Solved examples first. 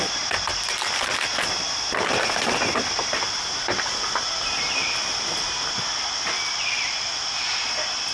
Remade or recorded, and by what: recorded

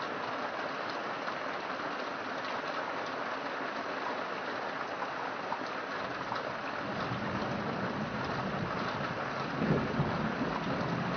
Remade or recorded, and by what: recorded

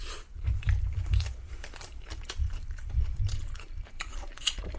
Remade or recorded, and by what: remade, vocoder, BigVGAN v2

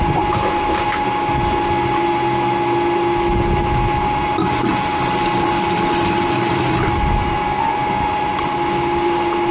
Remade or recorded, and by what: recorded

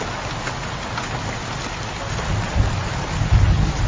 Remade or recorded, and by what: recorded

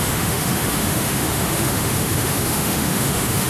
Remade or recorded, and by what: remade, autoencoder, DAC-VAE